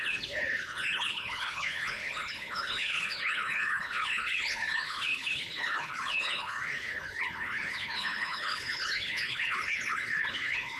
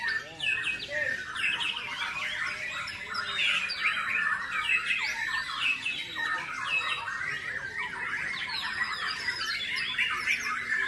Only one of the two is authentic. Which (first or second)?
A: second